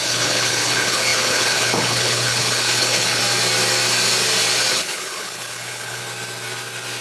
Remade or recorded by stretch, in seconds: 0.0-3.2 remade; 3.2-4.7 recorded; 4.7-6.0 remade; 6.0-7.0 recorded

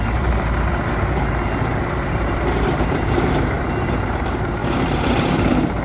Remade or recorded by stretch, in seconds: 0.0-5.8 remade

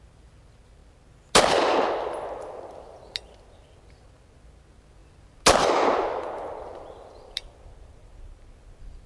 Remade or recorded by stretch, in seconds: 0.0-9.1 recorded

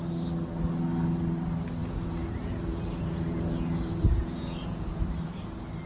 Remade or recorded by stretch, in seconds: 0.0-1.8 recorded; 1.8-5.0 remade; 5.0-5.9 recorded